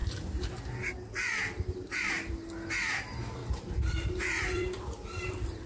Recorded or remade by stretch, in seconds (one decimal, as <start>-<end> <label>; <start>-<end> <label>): 0.0-3.4 recorded; 3.4-5.7 remade